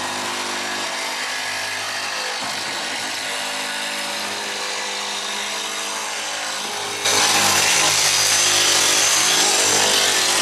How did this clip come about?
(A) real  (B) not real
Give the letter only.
A